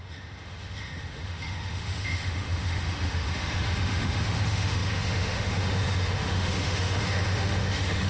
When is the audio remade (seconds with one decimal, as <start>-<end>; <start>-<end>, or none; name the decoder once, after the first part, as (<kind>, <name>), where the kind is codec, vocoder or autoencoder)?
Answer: 0.0-8.1 (autoencoder, DAC-VAE)